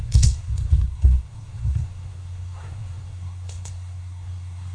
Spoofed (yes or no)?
yes